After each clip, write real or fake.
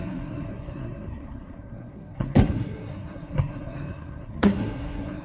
fake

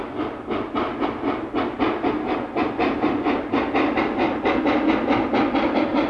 real